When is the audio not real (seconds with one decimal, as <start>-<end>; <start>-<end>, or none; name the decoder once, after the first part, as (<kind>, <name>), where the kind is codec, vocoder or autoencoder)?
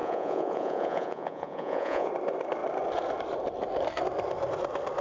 0.0-2.1 (vocoder, Vocos)